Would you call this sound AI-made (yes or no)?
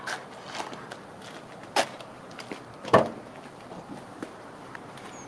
no